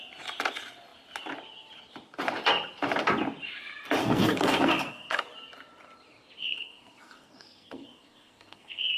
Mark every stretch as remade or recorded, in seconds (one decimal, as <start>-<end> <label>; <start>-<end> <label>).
0.0-4.0 recorded; 4.0-5.2 remade; 5.2-6.4 recorded; 6.4-9.0 remade